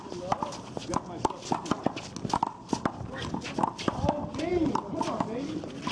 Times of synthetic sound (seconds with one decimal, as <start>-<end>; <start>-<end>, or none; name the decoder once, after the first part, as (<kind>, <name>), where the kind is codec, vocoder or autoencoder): none